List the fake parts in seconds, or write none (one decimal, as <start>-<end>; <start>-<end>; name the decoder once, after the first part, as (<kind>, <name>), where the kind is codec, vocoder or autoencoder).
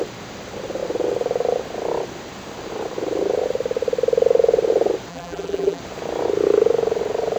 5.1-5.8 (vocoder, BigVGAN v2)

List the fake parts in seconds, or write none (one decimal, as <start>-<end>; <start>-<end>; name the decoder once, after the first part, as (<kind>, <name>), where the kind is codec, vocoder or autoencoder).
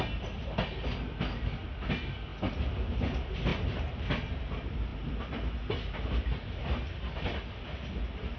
none